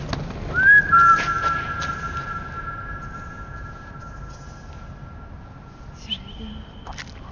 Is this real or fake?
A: real